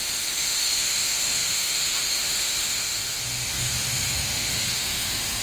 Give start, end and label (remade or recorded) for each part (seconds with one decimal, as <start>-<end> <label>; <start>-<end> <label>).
0.0-5.4 remade